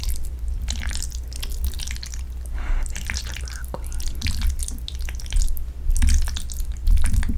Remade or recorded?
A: recorded